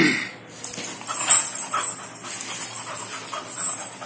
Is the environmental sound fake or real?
real